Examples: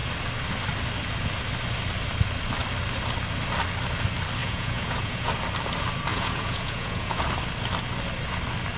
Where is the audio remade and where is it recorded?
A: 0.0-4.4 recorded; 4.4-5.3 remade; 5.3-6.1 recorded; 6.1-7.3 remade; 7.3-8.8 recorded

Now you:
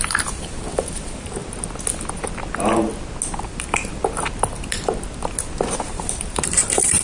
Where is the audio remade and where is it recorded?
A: 0.0-1.4 remade; 1.4-3.4 recorded; 3.4-3.9 remade; 3.9-5.9 recorded; 5.9-7.0 remade

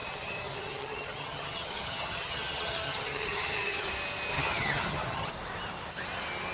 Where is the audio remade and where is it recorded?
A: 0.0-3.9 remade; 3.9-4.3 recorded; 4.3-5.3 remade; 5.3-6.5 recorded

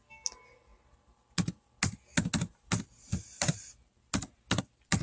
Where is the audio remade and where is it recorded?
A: 0.0-5.0 recorded

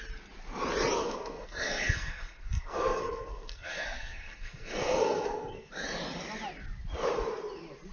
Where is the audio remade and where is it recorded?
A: 0.0-1.0 recorded; 1.0-5.7 remade; 5.7-7.9 recorded

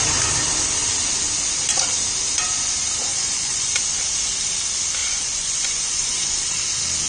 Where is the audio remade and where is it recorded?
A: 0.0-3.1 recorded; 3.1-3.7 remade; 3.7-5.0 recorded; 5.0-6.3 remade; 6.3-7.1 recorded

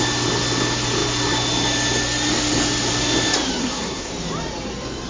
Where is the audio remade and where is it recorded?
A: 0.0-3.6 recorded; 3.6-4.1 remade; 4.1-5.1 recorded